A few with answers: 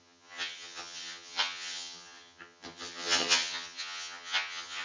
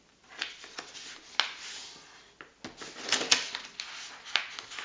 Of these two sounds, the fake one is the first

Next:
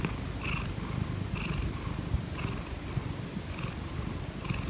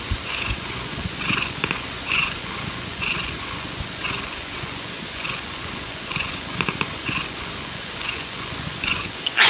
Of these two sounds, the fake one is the second